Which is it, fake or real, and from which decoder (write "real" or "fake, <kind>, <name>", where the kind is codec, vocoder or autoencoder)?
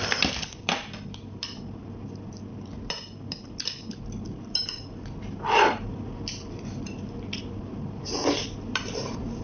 fake, vocoder, BigVGAN v2